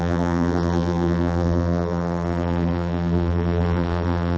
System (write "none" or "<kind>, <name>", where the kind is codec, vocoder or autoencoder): vocoder, BigVGAN v2